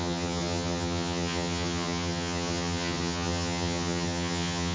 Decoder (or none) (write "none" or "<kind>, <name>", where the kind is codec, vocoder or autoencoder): vocoder, HiFi-GAN